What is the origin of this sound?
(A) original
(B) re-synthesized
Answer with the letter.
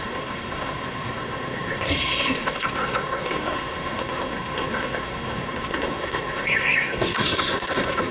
B